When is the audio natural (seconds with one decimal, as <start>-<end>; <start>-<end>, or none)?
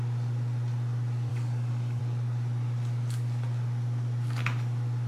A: 0.0-1.3; 2.0-5.1